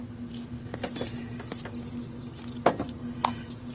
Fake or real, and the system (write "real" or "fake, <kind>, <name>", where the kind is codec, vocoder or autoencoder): real